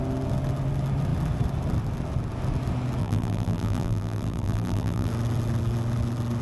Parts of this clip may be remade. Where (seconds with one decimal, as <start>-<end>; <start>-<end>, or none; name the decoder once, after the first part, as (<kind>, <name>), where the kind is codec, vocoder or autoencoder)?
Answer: 3.0-5.1 (vocoder, BigVGAN v2)

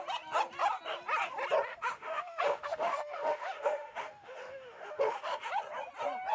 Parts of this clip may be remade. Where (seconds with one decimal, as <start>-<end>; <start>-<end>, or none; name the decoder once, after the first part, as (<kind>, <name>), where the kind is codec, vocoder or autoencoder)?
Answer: 1.7-5.5 (autoencoder, DAC-VAE)